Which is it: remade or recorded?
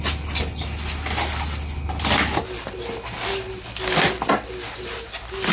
recorded